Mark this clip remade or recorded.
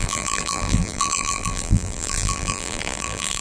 remade